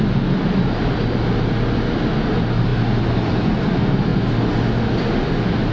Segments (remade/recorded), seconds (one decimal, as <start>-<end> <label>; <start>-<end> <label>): 0.0-5.7 recorded